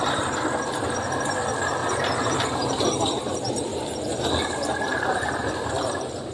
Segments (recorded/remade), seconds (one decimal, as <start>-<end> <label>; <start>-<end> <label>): 0.0-1.8 recorded; 1.8-2.9 remade; 2.9-3.7 recorded; 3.7-6.3 remade